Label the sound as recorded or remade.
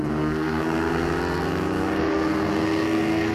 remade